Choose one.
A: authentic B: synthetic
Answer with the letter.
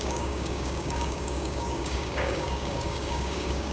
B